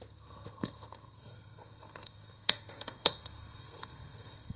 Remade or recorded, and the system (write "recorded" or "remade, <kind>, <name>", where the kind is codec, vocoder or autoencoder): remade, codec, SNAC